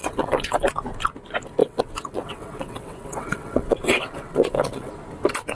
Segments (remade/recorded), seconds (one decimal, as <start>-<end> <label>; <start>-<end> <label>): 0.0-0.6 remade; 0.6-1.6 recorded; 1.6-4.9 remade; 4.9-5.5 recorded